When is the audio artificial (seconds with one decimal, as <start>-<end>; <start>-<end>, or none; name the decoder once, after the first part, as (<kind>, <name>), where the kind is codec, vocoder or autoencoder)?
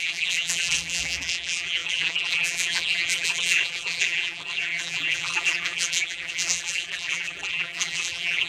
0.0-8.5 (vocoder, BigVGAN v2)